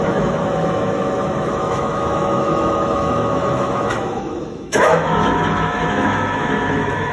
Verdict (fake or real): fake